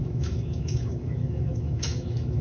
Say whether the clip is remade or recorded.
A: remade